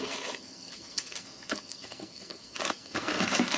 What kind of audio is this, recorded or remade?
remade